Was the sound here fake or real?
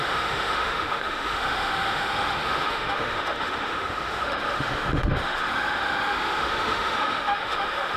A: fake